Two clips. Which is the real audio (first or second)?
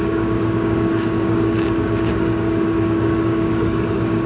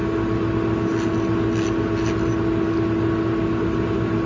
second